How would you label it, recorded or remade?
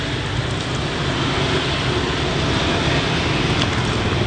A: recorded